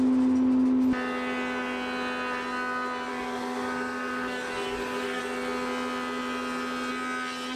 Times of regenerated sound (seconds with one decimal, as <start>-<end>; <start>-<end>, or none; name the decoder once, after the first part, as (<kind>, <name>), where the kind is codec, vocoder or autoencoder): 3.1-5.2 (codec, DAC)